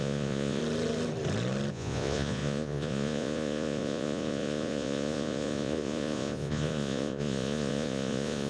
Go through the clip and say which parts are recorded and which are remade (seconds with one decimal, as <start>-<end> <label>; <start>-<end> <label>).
0.0-0.6 remade; 0.6-1.7 recorded; 1.7-8.5 remade